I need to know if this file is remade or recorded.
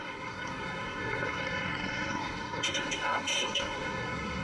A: remade